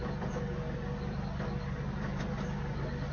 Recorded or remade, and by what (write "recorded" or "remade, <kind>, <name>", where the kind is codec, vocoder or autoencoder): recorded